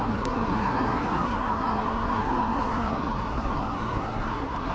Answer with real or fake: fake